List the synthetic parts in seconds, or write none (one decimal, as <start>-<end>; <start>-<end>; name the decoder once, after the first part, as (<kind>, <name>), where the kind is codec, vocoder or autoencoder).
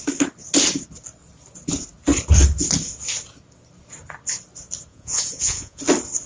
4.9-5.8 (vocoder, Vocos)